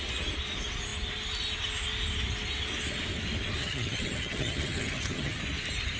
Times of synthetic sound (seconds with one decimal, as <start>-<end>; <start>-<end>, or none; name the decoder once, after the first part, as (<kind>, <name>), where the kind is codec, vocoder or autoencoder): 3.6-5.4 (vocoder, HiFi-GAN)